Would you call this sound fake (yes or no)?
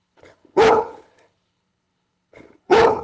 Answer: yes